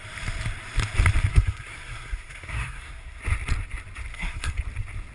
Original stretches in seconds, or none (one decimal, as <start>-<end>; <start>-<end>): 0.0-1.3; 3.2-4.1; 4.6-5.1